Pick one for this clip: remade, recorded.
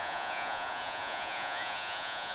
remade